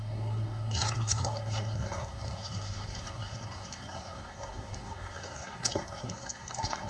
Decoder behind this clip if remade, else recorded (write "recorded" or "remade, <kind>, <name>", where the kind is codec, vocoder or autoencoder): remade, codec, SNAC